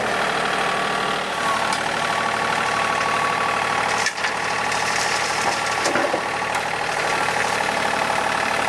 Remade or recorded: remade